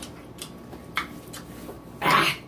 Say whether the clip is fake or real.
real